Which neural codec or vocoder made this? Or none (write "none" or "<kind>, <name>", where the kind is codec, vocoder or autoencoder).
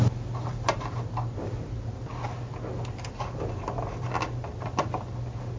none